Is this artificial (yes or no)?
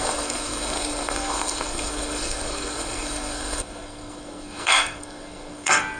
yes